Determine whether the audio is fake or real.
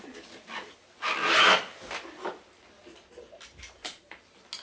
real